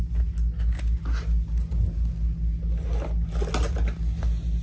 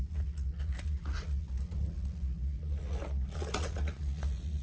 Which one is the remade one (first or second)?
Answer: second